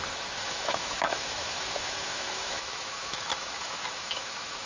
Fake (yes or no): yes